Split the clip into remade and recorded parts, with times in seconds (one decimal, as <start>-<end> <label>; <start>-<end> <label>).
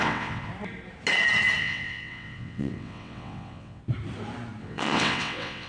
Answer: 0.0-0.5 remade; 0.5-1.6 recorded; 1.6-3.8 remade; 3.8-4.6 recorded; 4.6-5.7 remade